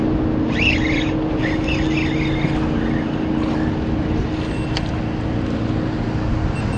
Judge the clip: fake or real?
real